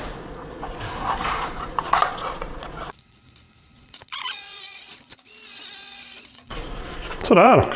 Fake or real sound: fake